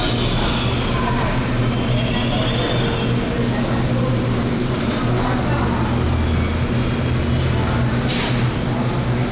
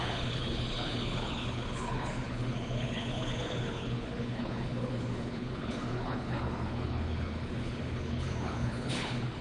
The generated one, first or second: second